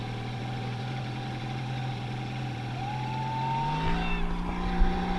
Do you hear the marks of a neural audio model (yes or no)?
no